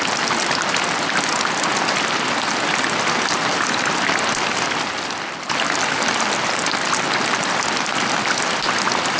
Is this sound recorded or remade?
recorded